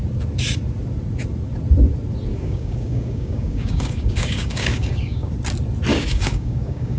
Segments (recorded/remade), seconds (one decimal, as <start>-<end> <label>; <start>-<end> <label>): 0.0-2.3 recorded; 2.3-5.3 remade; 5.3-5.9 recorded; 5.9-7.0 remade